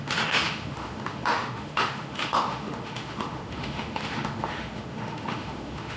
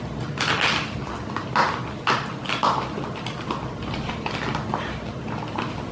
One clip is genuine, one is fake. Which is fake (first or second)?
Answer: first